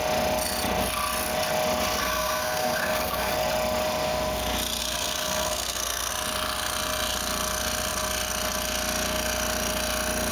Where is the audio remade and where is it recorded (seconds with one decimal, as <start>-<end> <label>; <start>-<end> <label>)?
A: 0.0-2.0 recorded; 2.0-3.3 remade; 3.3-4.8 recorded; 4.8-6.1 remade; 6.1-10.3 recorded